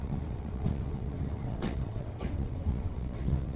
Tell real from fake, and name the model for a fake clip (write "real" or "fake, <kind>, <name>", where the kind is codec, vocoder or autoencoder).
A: fake, vocoder, WaveNeXt